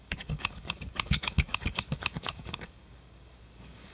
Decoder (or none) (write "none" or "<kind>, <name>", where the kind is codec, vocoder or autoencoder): codec, DAC